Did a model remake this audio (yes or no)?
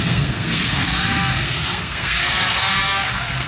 yes